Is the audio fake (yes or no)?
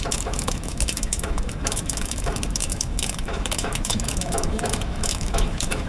yes